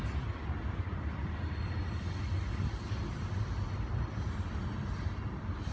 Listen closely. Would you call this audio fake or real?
real